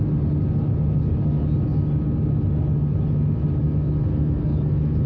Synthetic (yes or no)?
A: no